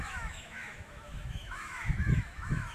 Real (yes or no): no